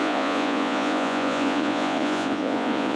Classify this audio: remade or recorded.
remade